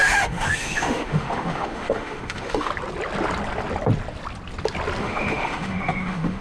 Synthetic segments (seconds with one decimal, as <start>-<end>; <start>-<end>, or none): 0.0-2.7; 5.0-6.4